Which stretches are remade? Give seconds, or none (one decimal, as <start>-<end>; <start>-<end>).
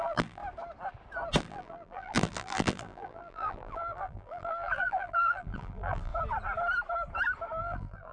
0.0-0.4; 1.4-6.1; 7.6-8.1